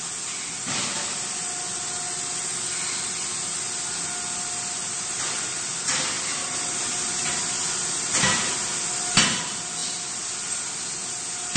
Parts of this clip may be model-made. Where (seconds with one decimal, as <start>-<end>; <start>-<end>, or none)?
9.8-10.7